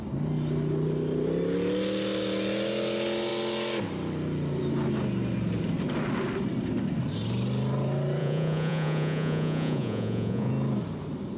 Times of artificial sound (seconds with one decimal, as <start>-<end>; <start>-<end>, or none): 8.2-10.5